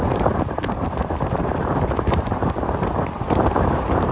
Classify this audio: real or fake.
fake